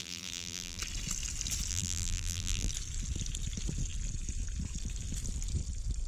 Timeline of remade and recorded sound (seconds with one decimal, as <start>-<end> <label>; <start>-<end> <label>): 0.0-0.8 remade; 0.8-1.7 recorded; 1.7-2.7 remade; 2.7-6.1 recorded